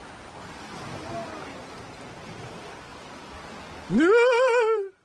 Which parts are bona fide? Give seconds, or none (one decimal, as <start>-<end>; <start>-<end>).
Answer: 0.0-2.4; 2.9-4.3